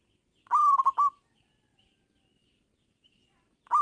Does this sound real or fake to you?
real